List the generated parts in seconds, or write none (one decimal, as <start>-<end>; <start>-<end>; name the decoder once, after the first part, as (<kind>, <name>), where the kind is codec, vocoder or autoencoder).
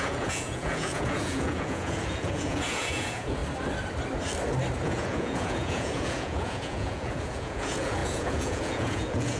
0.0-3.4 (vocoder, Vocos); 4.8-9.4